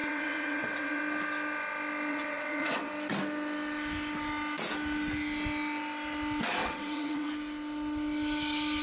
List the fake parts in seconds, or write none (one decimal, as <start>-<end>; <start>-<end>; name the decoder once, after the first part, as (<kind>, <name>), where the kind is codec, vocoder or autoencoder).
0.0-1.0 (vocoder, WaveNeXt); 2.1-2.9; 6.6-7.3